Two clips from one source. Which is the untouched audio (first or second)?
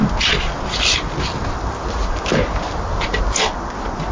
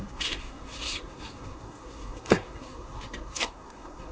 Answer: first